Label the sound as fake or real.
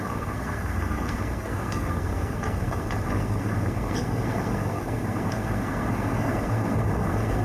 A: fake